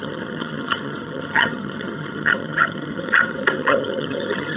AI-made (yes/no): yes